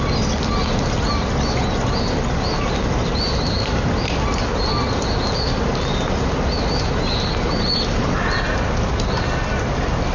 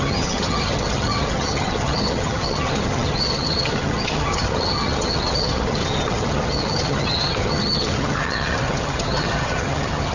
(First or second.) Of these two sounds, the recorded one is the first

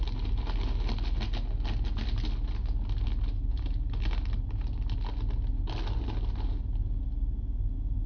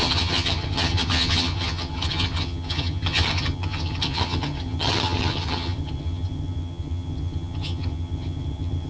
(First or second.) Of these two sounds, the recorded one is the first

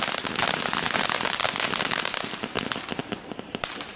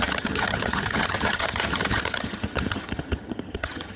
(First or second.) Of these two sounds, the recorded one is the first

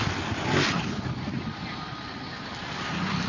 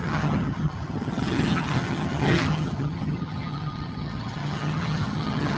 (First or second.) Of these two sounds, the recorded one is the first